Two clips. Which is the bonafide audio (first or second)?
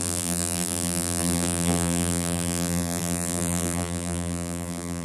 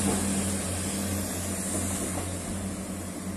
second